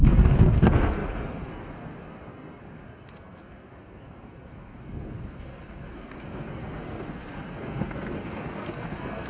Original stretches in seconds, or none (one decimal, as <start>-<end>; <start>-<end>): none